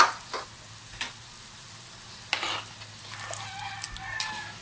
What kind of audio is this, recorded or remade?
recorded